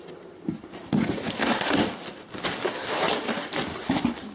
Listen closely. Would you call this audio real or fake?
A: real